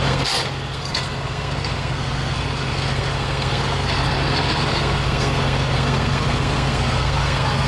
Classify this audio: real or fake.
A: fake